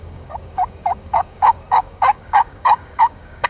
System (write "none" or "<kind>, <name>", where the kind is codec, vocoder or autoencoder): codec, DAC